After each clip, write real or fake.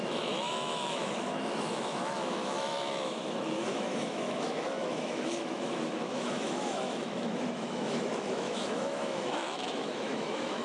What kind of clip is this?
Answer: fake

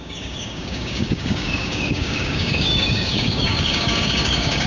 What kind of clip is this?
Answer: fake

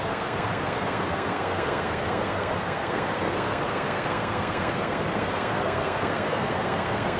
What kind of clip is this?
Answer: fake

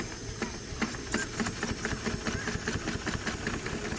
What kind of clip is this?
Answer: real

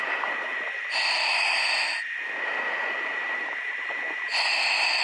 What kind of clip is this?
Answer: real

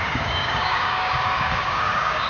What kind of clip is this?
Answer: fake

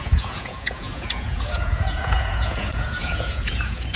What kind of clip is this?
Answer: fake